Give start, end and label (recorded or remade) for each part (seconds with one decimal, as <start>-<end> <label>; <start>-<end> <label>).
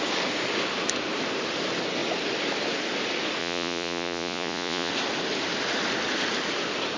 0.0-3.4 recorded; 3.4-4.9 remade; 4.9-7.0 recorded